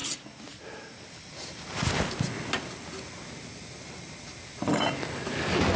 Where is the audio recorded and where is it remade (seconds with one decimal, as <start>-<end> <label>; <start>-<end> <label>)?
0.0-5.8 recorded